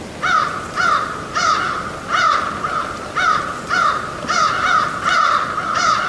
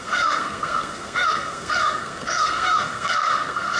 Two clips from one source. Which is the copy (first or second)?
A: second